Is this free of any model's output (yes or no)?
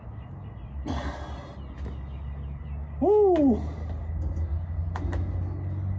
yes